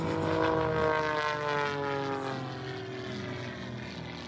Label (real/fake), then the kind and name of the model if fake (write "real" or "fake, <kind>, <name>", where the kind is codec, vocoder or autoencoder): real